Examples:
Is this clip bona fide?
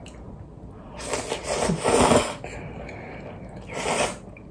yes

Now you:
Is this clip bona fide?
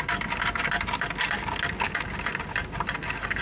yes